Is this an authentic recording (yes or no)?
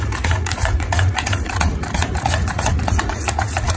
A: no